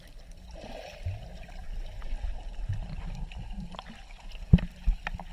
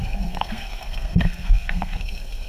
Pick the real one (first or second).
first